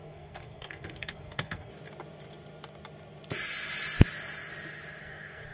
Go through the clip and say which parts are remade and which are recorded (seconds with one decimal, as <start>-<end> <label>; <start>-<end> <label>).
0.0-1.7 remade; 1.7-5.0 recorded; 5.0-5.5 remade